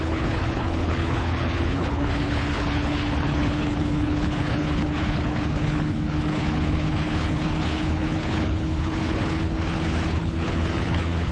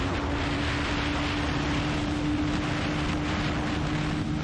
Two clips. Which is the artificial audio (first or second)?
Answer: first